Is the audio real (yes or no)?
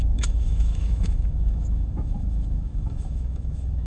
no